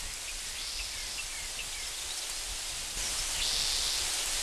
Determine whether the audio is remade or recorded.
recorded